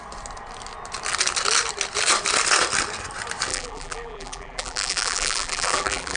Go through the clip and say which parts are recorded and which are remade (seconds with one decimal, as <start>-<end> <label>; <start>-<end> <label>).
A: 0.0-3.5 recorded; 3.5-6.2 remade